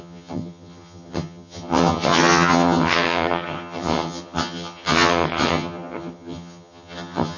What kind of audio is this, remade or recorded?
remade